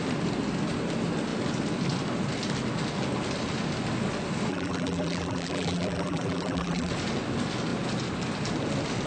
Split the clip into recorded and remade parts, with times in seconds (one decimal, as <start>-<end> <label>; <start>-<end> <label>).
0.0-4.5 recorded; 4.5-6.9 remade; 6.9-9.1 recorded